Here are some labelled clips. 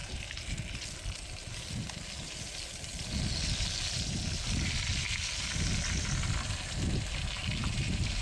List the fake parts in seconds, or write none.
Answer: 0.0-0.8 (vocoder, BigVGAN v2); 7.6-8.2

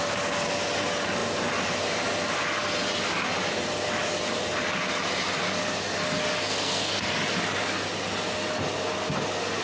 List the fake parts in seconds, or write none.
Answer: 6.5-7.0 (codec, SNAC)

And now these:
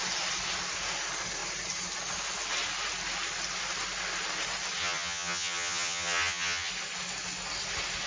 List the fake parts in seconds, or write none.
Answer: 4.8-6.7 (vocoder, HiFi-GAN)

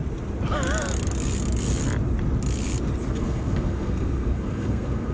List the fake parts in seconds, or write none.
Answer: 3.1-5.1 (codec, SNAC)